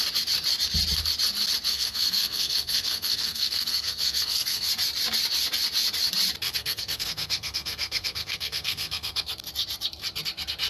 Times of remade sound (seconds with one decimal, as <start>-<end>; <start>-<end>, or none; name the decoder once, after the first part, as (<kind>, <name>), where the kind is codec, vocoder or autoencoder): 1.7-4.7 (codec, SNAC); 6.5-9.3